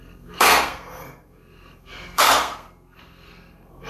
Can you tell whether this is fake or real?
fake